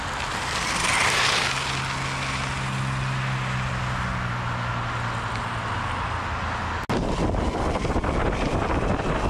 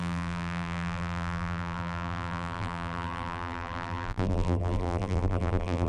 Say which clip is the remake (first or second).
second